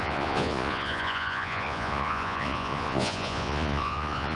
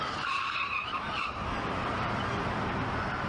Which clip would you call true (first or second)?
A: second